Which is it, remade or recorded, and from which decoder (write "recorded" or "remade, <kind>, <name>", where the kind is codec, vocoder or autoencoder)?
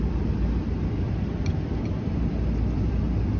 remade, vocoder, BigVGAN v2